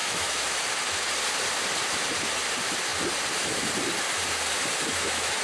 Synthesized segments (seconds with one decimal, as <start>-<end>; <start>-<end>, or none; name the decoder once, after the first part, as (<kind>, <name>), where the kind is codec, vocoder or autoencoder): 0.0-0.6 (autoencoder, DAC-VAE); 4.9-5.4